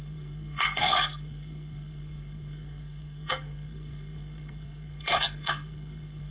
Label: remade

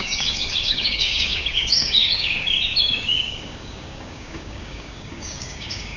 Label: remade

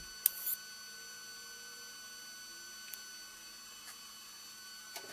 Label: recorded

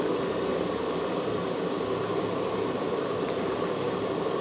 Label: recorded